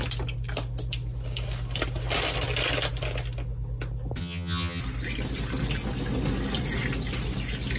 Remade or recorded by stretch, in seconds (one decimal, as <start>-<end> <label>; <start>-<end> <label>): 0.0-4.2 recorded; 4.2-4.8 remade; 4.8-7.8 recorded